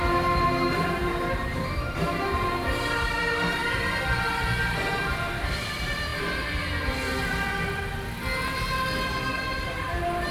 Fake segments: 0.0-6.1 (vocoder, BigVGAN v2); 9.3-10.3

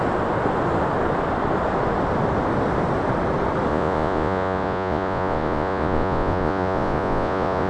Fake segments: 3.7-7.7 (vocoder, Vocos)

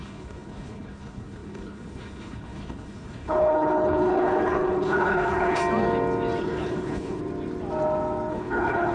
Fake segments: 0.0-5.6 (codec, HILCodec); 6.4-7.2; 8.3-8.9

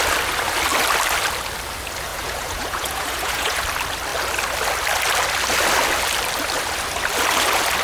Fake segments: 2.1-3.6 (vocoder, Vocos)

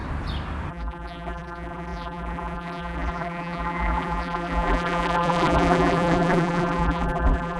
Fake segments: 0.7-7.6 (vocoder, BigVGAN v2)

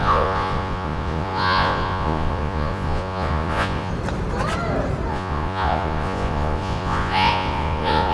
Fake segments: 0.0-3.9 (vocoder, Vocos); 5.1-8.1

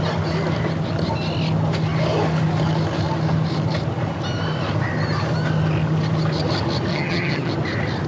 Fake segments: 6.9-7.5 (vocoder, HiFi-GAN)